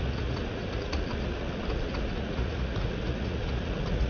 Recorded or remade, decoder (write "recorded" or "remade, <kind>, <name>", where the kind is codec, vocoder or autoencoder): remade, vocoder, Vocos